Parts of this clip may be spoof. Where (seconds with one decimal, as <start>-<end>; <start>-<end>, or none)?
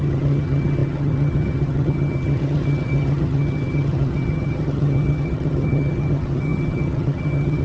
0.0-7.6